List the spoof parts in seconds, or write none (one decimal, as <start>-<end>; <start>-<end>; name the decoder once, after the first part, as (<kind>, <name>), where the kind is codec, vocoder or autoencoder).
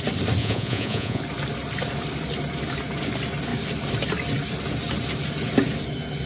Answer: 0.4-1.2 (vocoder, Vocos)